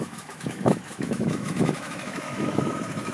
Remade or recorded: remade